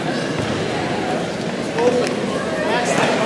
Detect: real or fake real